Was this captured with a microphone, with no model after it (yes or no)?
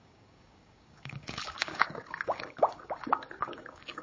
no